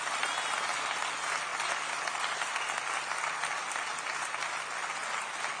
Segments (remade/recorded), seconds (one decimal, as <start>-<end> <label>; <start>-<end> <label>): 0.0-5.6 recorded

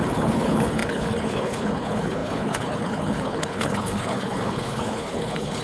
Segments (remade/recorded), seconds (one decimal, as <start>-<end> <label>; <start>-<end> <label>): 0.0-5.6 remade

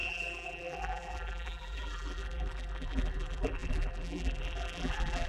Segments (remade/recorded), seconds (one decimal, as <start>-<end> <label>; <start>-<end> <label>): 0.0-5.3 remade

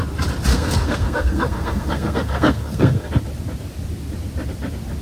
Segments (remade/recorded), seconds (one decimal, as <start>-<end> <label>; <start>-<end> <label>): 0.0-0.5 recorded; 0.5-3.1 remade; 3.1-5.0 recorded